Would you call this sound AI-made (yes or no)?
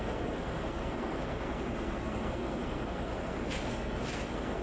yes